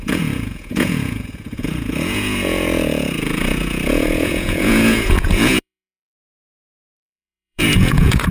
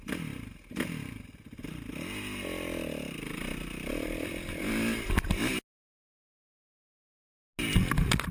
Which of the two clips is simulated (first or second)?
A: first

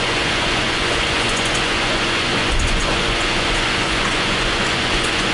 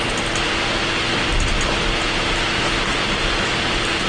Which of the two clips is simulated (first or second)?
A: first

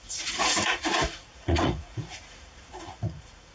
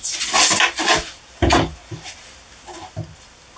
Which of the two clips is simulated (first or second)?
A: first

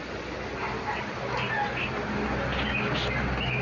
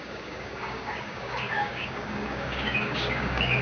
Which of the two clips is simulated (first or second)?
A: second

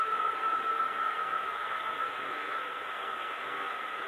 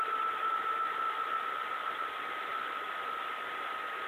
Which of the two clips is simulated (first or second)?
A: first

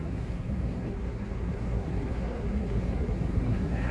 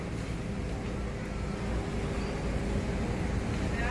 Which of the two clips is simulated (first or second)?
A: first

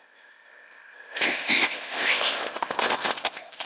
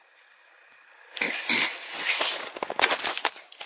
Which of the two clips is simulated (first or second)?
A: first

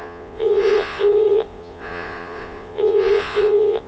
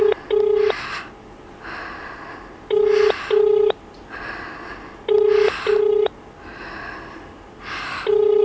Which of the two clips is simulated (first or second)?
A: first